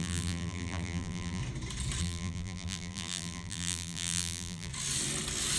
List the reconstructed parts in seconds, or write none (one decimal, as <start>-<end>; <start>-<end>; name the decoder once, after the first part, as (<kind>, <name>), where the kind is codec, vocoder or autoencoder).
0.0-1.4 (vocoder, BigVGAN v2); 2.0-4.7